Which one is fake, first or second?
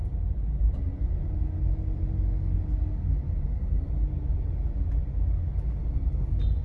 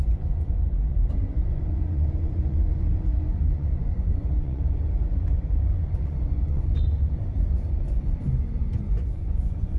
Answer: second